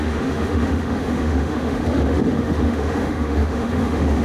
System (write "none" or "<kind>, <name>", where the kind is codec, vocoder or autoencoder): autoencoder, DAC-VAE